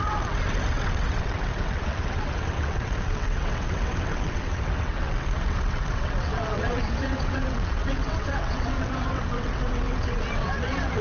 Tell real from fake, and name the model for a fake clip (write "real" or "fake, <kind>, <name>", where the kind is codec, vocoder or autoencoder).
fake, vocoder, WaveNeXt